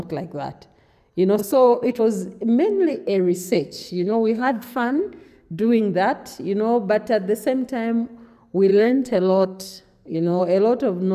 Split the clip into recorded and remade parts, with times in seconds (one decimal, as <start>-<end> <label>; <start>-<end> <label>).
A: 0.0-1.4 recorded; 1.4-2.0 remade; 2.0-2.9 recorded; 2.9-5.8 remade; 5.8-8.7 recorded; 8.7-10.4 remade; 10.4-11.1 recorded